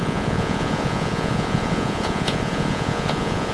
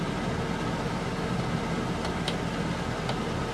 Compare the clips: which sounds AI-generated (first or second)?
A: first